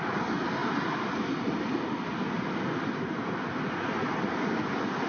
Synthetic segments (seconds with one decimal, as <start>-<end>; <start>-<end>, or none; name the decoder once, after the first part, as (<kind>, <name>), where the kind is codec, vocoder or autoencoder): none